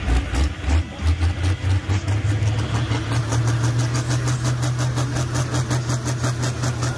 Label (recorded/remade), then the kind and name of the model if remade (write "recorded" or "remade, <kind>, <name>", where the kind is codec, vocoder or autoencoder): recorded